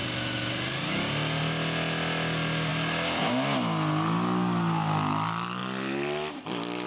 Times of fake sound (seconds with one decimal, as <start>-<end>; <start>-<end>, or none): 5.6-6.9